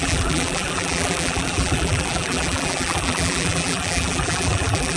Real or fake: fake